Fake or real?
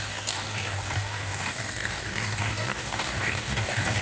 fake